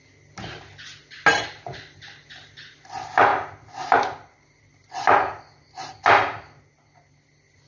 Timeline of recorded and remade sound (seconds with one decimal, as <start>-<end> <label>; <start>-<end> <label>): 0.0-7.7 recorded